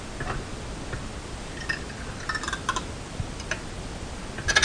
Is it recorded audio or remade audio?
recorded